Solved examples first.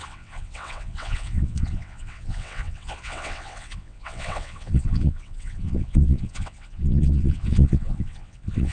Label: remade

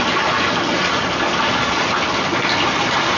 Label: recorded